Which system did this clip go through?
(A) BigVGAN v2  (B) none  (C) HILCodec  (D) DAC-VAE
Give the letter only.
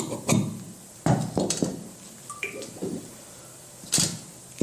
A